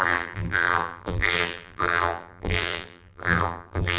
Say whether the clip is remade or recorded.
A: remade